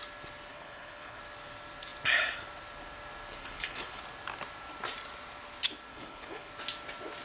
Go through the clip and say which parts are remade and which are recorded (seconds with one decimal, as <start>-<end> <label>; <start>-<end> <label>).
0.0-0.5 recorded; 0.5-1.2 remade; 1.2-3.4 recorded; 3.4-4.0 remade; 4.0-5.9 recorded; 5.9-6.5 remade; 6.5-7.2 recorded